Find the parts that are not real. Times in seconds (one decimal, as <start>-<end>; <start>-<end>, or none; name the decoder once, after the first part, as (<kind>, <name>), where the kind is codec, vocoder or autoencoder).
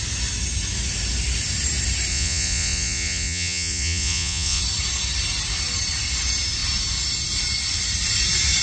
2.1-4.6 (vocoder, Vocos)